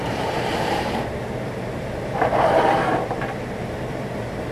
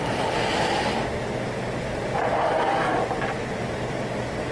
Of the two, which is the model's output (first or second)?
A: first